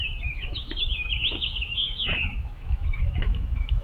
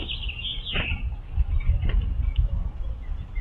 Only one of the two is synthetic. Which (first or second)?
first